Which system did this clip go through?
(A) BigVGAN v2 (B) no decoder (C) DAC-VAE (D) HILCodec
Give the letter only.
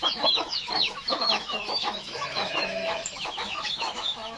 C